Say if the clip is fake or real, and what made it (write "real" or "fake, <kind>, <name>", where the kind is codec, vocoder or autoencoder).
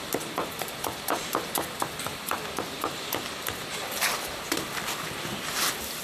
fake, vocoder, BigVGAN v2